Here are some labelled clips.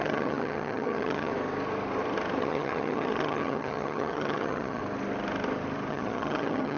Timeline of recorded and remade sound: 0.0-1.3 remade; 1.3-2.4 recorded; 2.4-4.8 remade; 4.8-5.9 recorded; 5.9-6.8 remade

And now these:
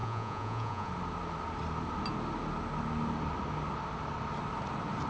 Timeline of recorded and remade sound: 0.0-0.9 remade; 0.9-5.1 recorded

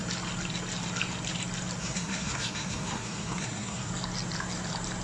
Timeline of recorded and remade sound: 0.0-1.8 recorded; 1.8-3.9 remade; 3.9-5.0 recorded

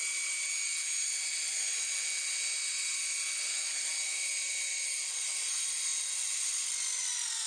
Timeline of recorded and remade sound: 0.0-7.5 recorded

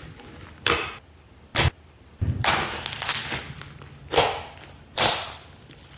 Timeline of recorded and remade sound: 0.0-6.0 recorded

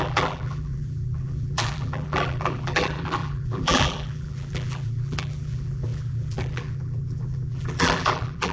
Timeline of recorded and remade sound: 0.0-8.5 remade

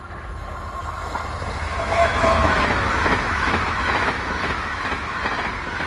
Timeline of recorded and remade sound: 0.0-1.7 recorded; 1.7-5.2 remade; 5.2-5.9 recorded

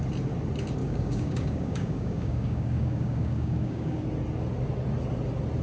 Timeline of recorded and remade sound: 0.0-0.8 recorded; 0.8-4.0 remade; 4.0-5.6 recorded